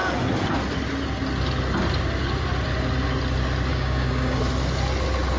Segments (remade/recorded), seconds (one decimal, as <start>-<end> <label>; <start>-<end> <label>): 0.0-3.7 recorded; 3.7-4.4 remade; 4.4-5.4 recorded